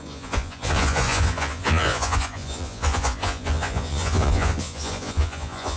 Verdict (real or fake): fake